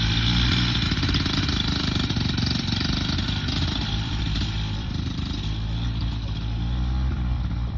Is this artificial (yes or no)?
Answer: yes